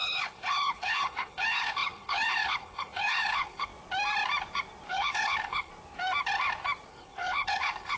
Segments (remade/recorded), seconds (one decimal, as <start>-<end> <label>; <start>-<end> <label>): 0.0-3.7 remade; 3.7-4.9 recorded; 4.9-5.7 remade; 5.7-6.9 recorded; 6.9-8.0 remade